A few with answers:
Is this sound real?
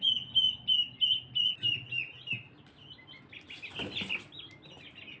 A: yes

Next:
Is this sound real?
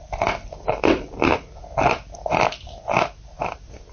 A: yes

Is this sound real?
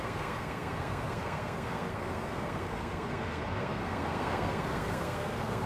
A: no